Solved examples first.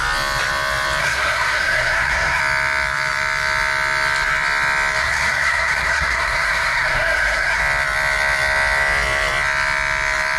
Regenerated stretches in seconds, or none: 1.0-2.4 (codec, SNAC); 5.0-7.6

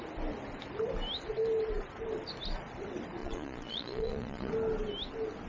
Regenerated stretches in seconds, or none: 3.2-4.5 (vocoder, Vocos)

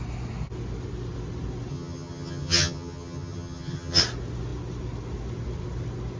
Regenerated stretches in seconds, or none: 1.7-4.0 (vocoder, HiFi-GAN)